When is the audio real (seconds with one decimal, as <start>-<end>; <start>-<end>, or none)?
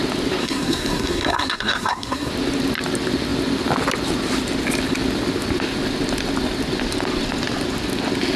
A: 0.0-0.4; 2.3-8.4